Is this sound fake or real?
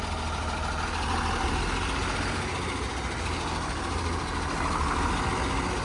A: real